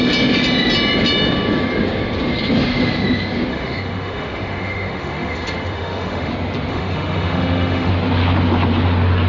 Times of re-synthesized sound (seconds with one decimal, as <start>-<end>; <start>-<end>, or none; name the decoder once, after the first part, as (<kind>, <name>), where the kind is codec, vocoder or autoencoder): 3.5-6.3 (autoencoder, DAC-VAE); 6.7-7.9